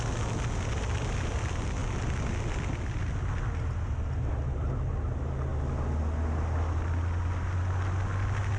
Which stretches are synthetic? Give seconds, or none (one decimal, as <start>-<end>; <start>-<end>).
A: none